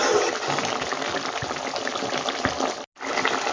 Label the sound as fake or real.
real